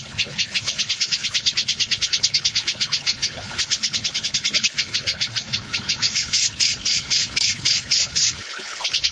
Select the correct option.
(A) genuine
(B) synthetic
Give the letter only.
B